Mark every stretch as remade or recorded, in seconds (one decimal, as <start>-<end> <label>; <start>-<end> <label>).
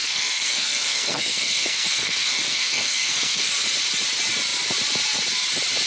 0.0-3.5 remade; 3.5-5.9 recorded